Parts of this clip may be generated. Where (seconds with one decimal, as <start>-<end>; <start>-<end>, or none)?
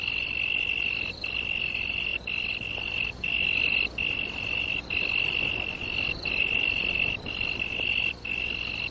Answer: none